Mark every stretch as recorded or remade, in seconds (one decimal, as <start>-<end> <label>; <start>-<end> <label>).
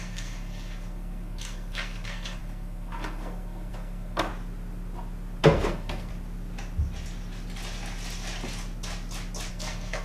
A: 0.0-4.3 remade; 4.3-5.4 recorded; 5.4-6.1 remade; 6.1-9.5 recorded; 9.5-10.0 remade